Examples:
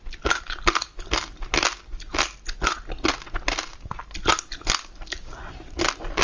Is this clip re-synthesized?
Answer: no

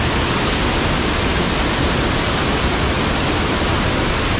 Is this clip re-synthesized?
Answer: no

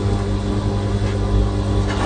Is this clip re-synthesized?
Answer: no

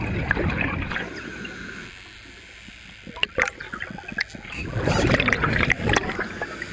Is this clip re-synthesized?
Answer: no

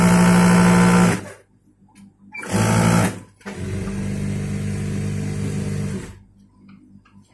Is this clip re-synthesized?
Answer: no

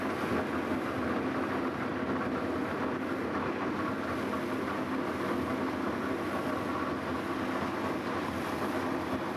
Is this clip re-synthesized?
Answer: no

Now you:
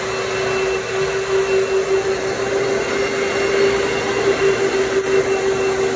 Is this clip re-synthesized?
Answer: no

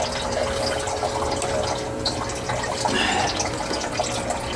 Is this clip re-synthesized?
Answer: no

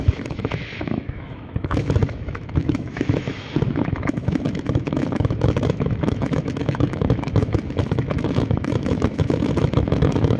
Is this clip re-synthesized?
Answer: yes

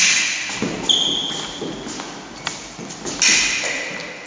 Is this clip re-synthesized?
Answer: no